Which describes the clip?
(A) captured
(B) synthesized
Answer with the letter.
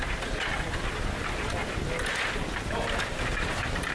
A